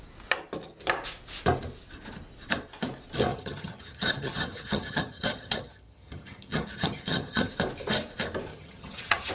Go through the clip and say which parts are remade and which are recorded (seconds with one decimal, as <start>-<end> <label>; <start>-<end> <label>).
0.0-3.3 recorded; 3.3-7.5 remade; 7.5-8.5 recorded; 8.5-9.3 remade